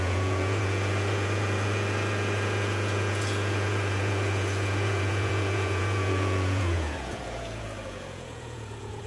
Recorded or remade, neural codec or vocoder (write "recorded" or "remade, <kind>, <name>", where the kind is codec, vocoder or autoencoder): remade, vocoder, Vocos